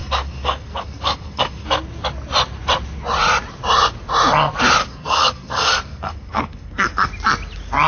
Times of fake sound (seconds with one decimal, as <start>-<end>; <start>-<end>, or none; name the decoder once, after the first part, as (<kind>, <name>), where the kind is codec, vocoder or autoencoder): 0.0-1.7 (codec, SNAC); 4.8-7.1